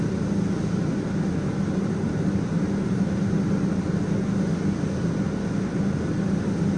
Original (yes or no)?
yes